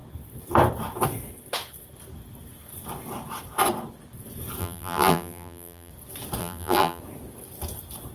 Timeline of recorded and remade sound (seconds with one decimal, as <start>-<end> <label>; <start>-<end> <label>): 0.0-4.6 recorded; 4.6-5.9 remade; 5.9-6.4 recorded; 6.4-7.0 remade; 7.0-8.1 recorded